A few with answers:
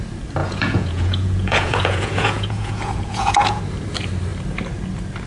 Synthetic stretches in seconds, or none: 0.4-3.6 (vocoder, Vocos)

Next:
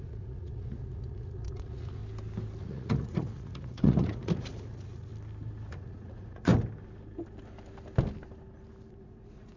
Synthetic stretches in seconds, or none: 0.0-2.0 (vocoder, Vocos); 2.6-5.1; 5.7-6.5; 8.9-9.6

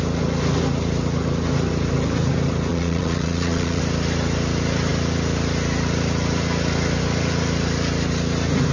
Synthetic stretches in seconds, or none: 2.7-3.8 (vocoder, Vocos)

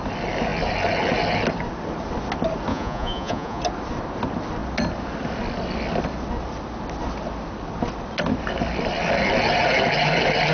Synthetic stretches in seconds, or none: 2.7-3.6 (vocoder, Vocos)